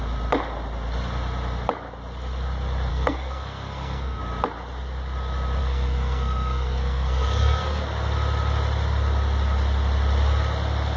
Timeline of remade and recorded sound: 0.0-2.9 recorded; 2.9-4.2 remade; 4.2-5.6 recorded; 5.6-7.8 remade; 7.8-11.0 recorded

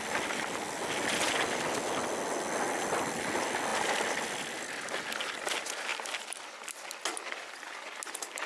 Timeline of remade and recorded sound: 0.0-8.5 recorded

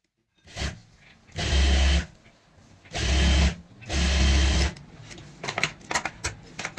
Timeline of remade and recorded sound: 0.0-6.8 recorded

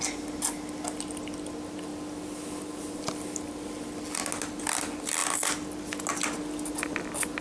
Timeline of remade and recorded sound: 0.0-7.4 recorded

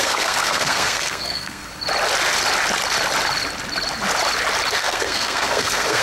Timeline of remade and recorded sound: 0.0-1.6 remade; 1.6-4.7 recorded; 4.7-6.0 remade

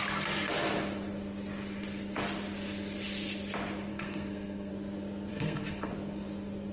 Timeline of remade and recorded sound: 0.0-3.9 recorded; 3.9-4.7 remade; 4.7-5.3 recorded; 5.3-5.9 remade; 5.9-6.7 recorded